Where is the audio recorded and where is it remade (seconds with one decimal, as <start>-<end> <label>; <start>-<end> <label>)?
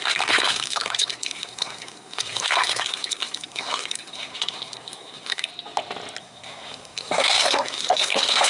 0.0-5.5 remade; 5.5-6.2 recorded; 6.2-8.5 remade